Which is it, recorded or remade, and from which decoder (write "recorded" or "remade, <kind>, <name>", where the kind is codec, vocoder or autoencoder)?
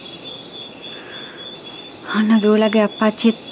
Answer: recorded